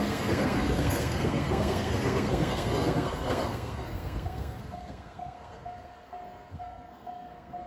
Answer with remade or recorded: remade